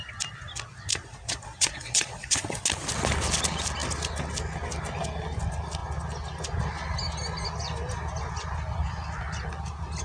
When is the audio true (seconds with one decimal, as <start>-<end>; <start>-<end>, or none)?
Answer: 0.0-0.9; 2.6-10.0